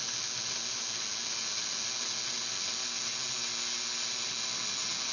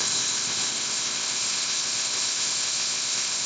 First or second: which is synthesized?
second